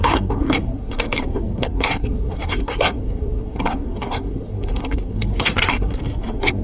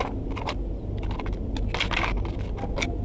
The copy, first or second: first